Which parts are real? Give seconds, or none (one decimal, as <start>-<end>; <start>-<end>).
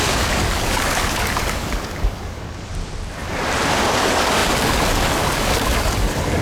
2.7-4.0